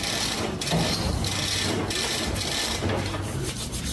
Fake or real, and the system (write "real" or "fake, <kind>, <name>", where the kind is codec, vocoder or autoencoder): real